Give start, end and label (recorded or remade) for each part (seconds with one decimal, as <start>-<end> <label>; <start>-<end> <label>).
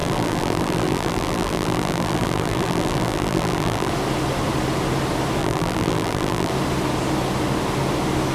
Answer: 0.0-3.9 remade; 3.9-5.4 recorded; 5.4-6.5 remade; 6.5-8.3 recorded